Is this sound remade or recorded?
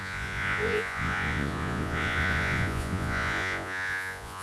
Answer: remade